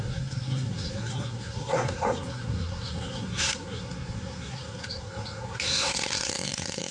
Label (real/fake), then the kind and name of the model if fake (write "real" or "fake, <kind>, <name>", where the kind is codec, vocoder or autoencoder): fake, codec, SNAC